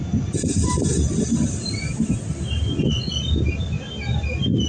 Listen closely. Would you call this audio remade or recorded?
recorded